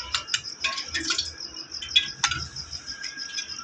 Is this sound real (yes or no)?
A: yes